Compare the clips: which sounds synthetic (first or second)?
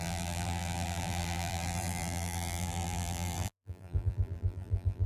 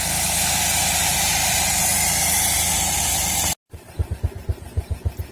first